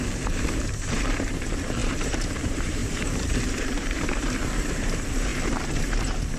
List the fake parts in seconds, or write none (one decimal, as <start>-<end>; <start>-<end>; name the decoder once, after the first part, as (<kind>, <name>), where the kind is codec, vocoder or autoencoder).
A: 0.0-6.4 (vocoder, BigVGAN v2)